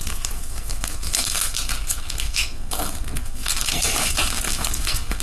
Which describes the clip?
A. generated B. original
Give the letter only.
A